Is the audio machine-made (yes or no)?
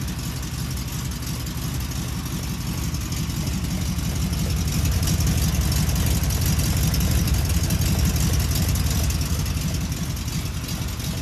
no